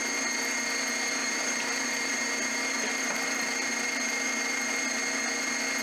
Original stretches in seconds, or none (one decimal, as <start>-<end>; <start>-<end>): 0.0-1.2; 4.7-5.8